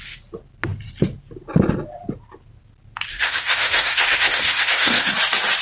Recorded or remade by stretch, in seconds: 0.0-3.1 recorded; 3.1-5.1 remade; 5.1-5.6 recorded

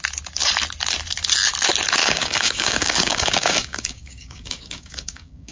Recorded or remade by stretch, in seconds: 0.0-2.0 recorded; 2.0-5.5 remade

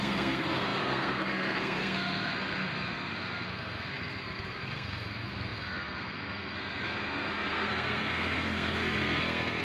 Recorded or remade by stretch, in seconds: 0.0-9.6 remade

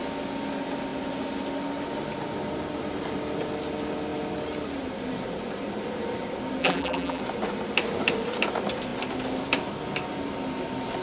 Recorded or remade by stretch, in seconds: 0.0-6.6 recorded; 6.6-7.2 remade; 7.2-11.0 recorded